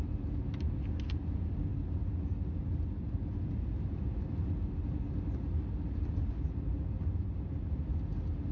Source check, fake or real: real